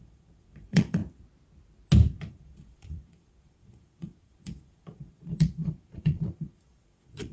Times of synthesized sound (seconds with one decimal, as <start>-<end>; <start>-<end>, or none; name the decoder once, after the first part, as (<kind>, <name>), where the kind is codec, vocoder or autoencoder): 0.0-1.0 (vocoder, Vocos); 2.3-7.3